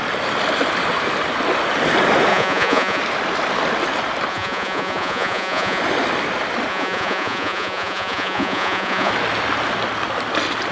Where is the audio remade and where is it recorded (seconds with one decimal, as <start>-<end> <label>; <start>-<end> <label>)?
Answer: 0.0-2.3 recorded; 2.3-3.0 remade; 3.0-4.3 recorded; 4.3-5.8 remade; 5.8-6.7 recorded; 6.7-9.1 remade; 9.1-10.7 recorded

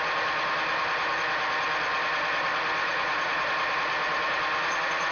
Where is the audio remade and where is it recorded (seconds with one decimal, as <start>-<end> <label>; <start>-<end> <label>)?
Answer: 0.0-2.8 recorded; 2.8-3.4 remade; 3.4-5.1 recorded

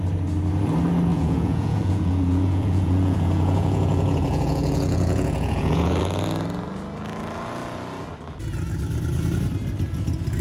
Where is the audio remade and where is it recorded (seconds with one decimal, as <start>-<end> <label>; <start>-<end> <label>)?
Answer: 0.0-1.1 recorded; 1.1-6.0 remade; 6.0-10.4 recorded

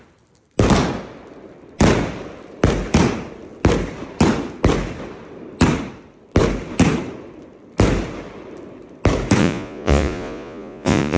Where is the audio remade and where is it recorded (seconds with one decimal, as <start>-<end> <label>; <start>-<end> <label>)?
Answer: 0.0-9.4 recorded; 9.4-11.2 remade

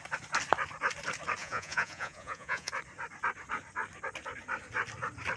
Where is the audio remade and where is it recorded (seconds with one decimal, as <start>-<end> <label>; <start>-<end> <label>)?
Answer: 0.0-1.4 recorded; 1.4-2.7 remade; 2.7-5.4 recorded

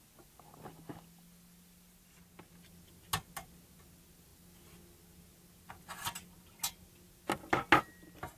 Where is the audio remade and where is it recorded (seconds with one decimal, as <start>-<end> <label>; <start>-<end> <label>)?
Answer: 0.0-8.4 recorded

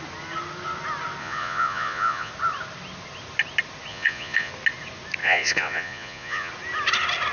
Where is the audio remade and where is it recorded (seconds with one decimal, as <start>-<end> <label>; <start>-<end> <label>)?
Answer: 0.0-1.2 recorded; 1.2-2.3 remade; 2.3-3.9 recorded; 3.9-4.5 remade; 4.5-5.2 recorded; 5.2-6.5 remade; 6.5-7.3 recorded

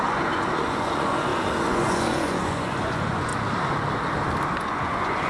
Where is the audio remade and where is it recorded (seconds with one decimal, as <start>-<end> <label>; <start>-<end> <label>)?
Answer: 0.0-3.3 remade; 3.3-4.6 recorded; 4.6-5.3 remade